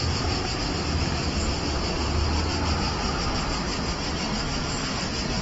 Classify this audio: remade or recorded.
recorded